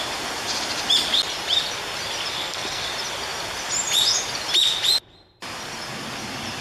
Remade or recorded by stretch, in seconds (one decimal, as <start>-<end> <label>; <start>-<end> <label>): 0.0-2.4 recorded; 2.4-2.9 remade; 2.9-6.6 recorded